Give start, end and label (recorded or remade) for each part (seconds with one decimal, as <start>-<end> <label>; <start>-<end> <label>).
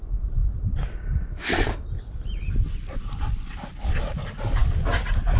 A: 0.0-5.4 recorded